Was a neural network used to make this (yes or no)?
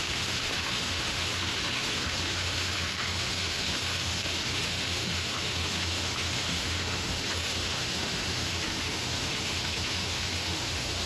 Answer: yes